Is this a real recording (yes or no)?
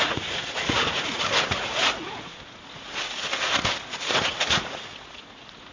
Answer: no